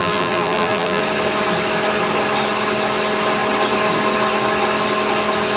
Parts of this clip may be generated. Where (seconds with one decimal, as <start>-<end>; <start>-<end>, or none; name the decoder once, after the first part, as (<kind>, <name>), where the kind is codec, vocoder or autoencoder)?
0.0-1.0 (vocoder, BigVGAN v2)